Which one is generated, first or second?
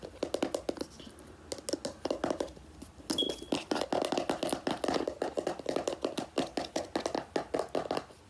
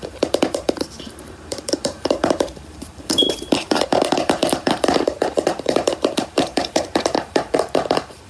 second